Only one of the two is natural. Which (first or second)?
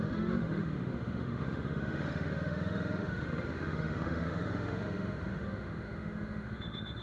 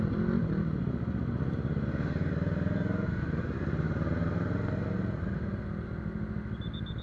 second